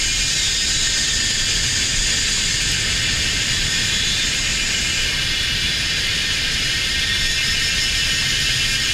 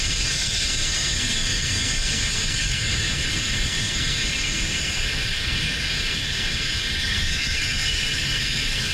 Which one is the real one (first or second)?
first